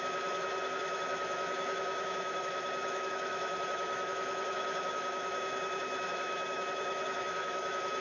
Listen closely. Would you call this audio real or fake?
fake